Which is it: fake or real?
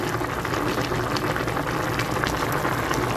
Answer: real